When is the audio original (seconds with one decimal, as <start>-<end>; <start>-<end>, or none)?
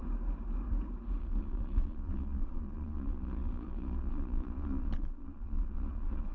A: 0.0-1.2